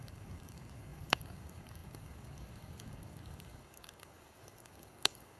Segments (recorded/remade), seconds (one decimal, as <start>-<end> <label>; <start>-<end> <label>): 0.0-5.4 remade